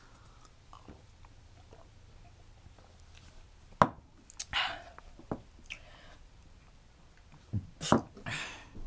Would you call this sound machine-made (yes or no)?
no